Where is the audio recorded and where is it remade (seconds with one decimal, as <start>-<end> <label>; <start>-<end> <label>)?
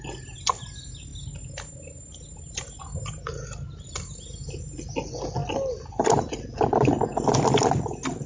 0.0-8.3 recorded